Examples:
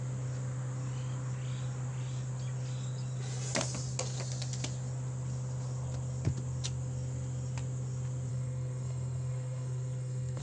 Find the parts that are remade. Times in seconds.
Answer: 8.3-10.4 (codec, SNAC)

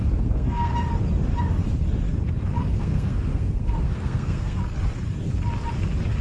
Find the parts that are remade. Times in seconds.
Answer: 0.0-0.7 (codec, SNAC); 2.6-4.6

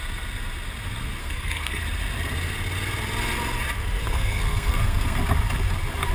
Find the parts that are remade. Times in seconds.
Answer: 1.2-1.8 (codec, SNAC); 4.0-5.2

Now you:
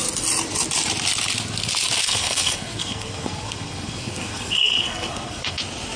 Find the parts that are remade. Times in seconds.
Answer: 2.0-5.6 (codec, SNAC)

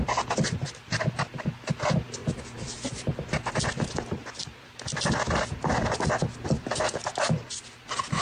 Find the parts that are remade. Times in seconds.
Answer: none

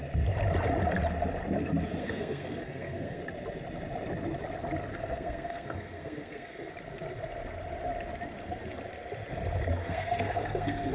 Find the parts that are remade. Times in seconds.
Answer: 2.0-3.2 (codec, SNAC); 4.9-6.7; 9.8-10.9

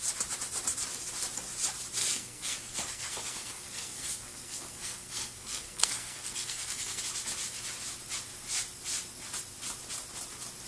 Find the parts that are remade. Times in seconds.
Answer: 2.0-7.0 (codec, SNAC)

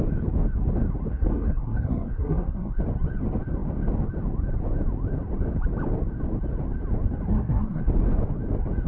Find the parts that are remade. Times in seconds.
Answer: 1.1-2.7 (codec, SNAC); 7.3-7.8